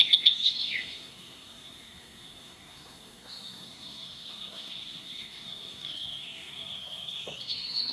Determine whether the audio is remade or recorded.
remade